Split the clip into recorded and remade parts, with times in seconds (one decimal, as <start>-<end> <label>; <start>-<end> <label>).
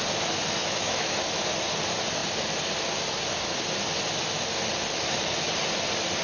0.0-0.6 recorded; 0.6-1.2 remade; 1.2-6.2 recorded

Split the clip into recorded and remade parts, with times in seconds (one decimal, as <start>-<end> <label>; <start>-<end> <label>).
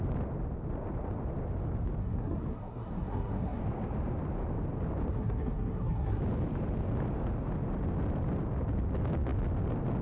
0.0-2.0 recorded; 2.0-3.6 remade; 3.6-5.1 recorded; 5.1-6.2 remade; 6.2-10.0 recorded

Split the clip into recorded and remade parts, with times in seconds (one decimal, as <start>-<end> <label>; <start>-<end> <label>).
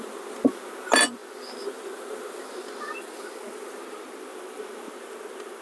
0.0-5.6 recorded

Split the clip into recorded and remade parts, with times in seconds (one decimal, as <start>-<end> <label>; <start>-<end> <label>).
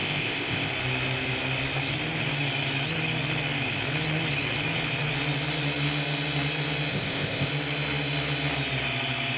0.0-0.7 remade; 0.7-6.9 recorded; 6.9-7.5 remade; 7.5-9.4 recorded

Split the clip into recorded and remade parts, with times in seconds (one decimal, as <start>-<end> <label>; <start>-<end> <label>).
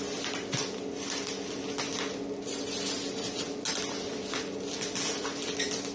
0.0-5.9 recorded